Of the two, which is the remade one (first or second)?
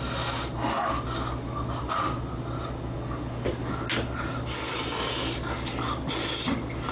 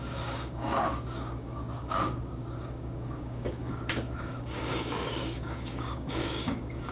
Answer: second